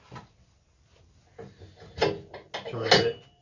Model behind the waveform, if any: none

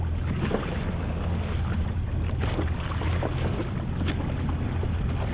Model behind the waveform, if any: none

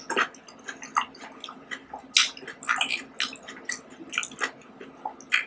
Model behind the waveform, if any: none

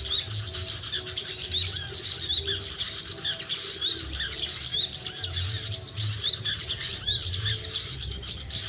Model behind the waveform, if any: none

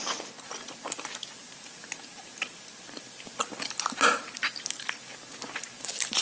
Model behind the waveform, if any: none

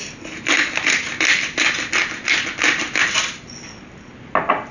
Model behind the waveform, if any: none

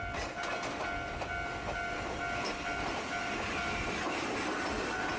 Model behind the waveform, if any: none